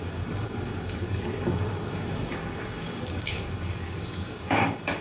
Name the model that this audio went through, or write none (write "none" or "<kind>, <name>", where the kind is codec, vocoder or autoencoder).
codec, DAC